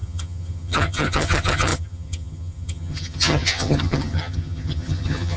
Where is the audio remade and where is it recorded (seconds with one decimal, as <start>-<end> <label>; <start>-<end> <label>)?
0.0-5.4 remade